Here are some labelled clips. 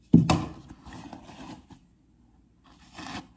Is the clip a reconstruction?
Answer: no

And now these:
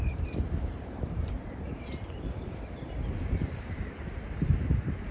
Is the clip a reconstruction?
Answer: yes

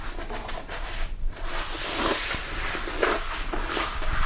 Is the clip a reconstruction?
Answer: no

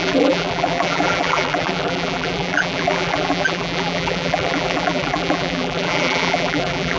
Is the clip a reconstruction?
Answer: yes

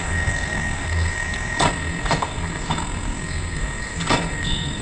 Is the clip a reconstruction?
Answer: yes